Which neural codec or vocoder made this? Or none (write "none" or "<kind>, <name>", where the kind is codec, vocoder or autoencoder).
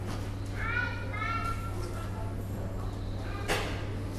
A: none